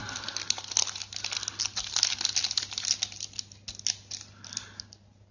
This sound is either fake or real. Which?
real